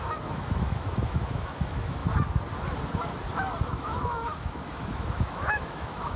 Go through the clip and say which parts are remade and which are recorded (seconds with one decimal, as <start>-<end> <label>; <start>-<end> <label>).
0.0-2.0 remade; 2.0-3.6 recorded; 3.6-6.2 remade